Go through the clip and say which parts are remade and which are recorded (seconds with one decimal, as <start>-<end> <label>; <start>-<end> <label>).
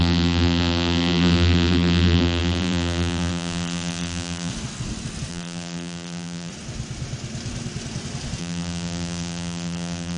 0.0-4.5 remade; 4.5-5.3 recorded; 5.3-6.5 remade; 6.5-8.4 recorded; 8.4-10.2 remade